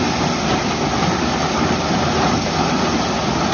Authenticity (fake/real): real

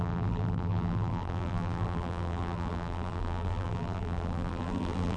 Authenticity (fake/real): fake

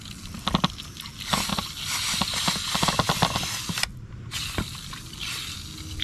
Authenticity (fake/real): real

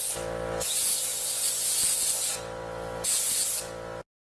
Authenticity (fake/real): real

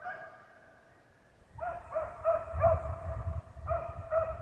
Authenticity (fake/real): fake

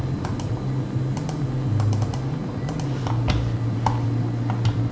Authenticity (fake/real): real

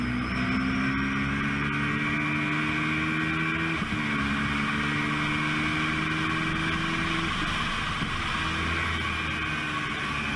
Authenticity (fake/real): real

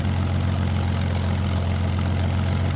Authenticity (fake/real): real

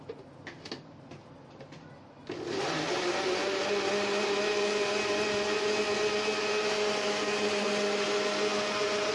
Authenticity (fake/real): real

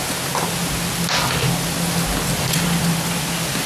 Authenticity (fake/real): real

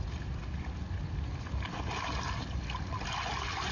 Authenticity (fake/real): real